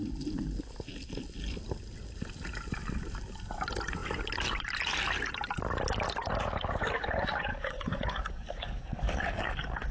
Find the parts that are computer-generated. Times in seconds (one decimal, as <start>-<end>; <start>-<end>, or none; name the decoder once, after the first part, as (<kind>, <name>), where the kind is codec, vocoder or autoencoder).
7.5-9.9 (codec, DAC)